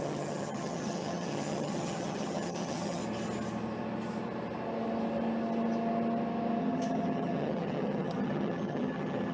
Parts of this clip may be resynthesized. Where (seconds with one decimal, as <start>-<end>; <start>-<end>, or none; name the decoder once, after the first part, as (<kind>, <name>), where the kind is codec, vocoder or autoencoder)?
0.0-3.0 (vocoder, HiFi-GAN); 6.6-9.3